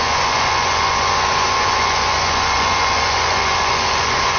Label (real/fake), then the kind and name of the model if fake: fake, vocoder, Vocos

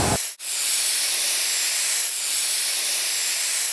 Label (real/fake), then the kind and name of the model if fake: real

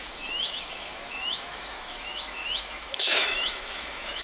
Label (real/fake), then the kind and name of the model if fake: fake, autoencoder, DAC-VAE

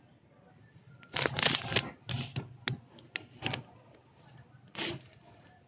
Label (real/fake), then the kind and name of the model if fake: real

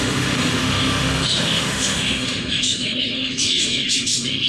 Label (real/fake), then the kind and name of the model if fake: fake, autoencoder, DAC-VAE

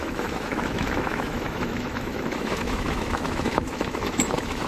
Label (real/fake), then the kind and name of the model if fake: fake, autoencoder, DAC-VAE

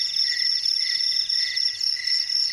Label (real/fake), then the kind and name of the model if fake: real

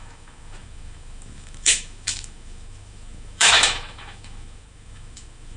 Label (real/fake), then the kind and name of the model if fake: fake, autoencoder, DAC-VAE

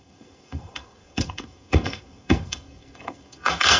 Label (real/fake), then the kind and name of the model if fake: fake, codec, SNAC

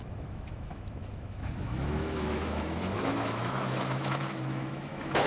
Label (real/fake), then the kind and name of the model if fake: fake, autoencoder, DAC-VAE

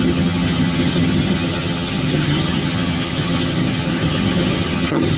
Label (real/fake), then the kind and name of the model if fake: fake, vocoder, HiFi-GAN